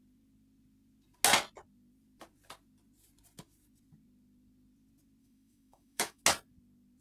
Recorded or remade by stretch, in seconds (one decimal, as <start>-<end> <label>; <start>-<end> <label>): 0.0-5.2 recorded; 5.2-6.2 remade; 6.2-7.0 recorded